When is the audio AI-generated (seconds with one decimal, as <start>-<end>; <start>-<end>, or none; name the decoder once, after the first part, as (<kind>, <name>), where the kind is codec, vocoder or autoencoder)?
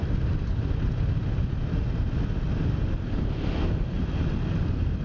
none